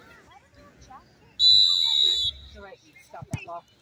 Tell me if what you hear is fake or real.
real